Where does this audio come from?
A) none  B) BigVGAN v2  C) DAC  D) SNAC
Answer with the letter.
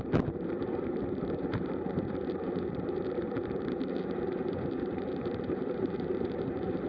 B